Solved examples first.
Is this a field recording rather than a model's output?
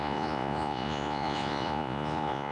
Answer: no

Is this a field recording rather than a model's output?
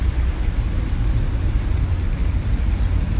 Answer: yes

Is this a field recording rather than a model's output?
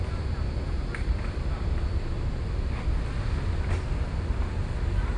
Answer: yes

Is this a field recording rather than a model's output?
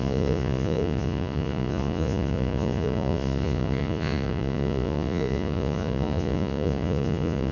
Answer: no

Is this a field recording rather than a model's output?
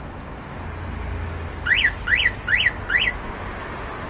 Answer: yes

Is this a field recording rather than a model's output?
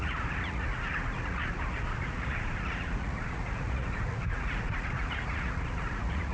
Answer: no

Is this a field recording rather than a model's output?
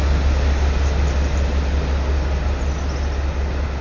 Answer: yes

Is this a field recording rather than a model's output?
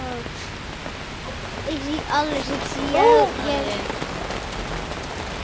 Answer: yes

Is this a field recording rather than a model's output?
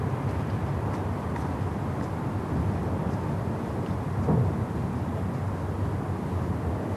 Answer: yes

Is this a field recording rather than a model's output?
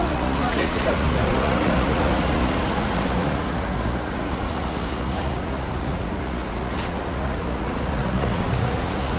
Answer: no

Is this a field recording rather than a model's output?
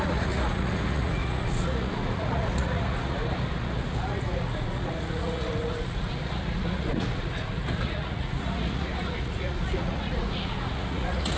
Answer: no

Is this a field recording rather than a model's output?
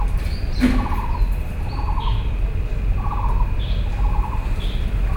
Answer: yes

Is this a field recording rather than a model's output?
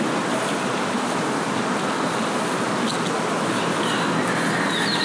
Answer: yes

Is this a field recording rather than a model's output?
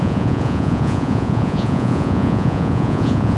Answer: no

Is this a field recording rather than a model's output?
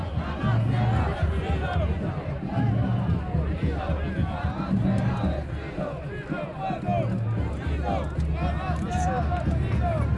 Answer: yes